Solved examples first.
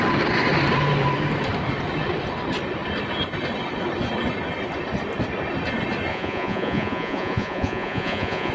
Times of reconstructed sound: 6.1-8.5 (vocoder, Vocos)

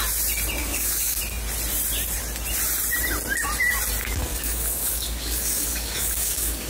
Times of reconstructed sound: 0.6-1.2 (codec, DAC); 4.0-6.7

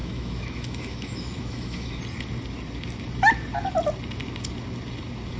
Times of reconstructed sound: 0.0-2.0 (autoencoder, DAC-VAE)

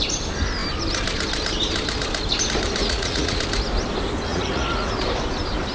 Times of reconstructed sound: 2.8-3.4 (vocoder, Vocos); 4.3-4.9

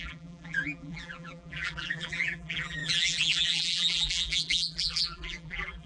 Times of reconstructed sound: 0.0-5.9 (vocoder, BigVGAN v2)

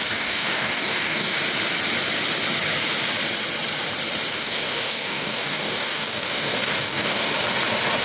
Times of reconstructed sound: 0.0-1.4 (codec, DAC); 4.3-7.3